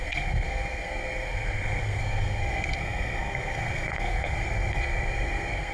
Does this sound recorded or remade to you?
remade